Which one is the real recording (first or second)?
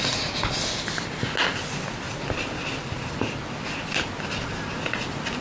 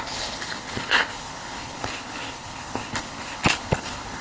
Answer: first